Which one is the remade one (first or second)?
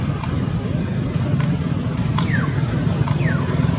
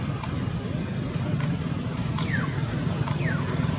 first